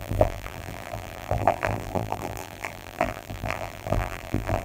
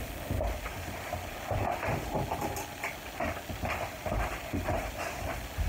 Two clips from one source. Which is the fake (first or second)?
first